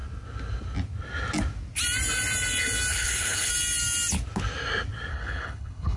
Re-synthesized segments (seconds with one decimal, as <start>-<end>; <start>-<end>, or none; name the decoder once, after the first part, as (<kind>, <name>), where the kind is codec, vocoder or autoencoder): 2.9-3.5 (codec, HILCodec); 5.1-6.0